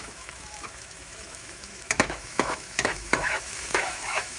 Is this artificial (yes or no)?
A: yes